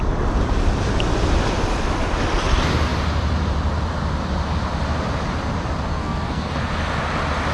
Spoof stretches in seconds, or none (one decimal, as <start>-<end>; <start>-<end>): 5.9-6.5